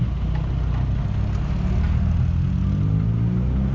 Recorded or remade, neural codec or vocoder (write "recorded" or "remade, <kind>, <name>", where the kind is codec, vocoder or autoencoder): recorded